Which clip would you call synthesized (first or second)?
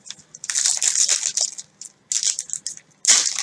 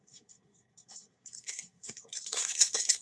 second